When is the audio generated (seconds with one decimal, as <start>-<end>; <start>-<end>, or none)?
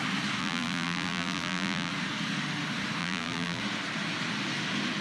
0.4-1.9; 3.0-3.6